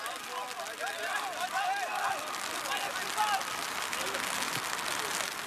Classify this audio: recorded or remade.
recorded